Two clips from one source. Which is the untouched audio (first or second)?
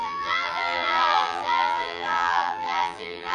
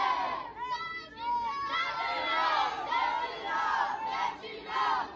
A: second